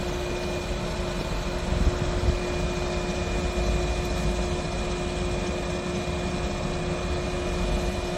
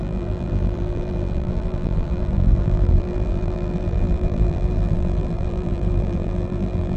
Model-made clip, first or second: second